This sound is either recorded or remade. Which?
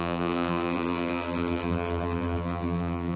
remade